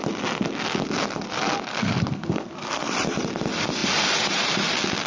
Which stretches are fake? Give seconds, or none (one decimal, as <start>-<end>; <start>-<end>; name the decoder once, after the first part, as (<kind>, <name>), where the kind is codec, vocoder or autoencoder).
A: 1.7-2.9 (codec, SNAC)